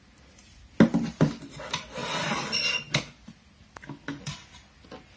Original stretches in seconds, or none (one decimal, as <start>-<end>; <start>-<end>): 0.0-5.2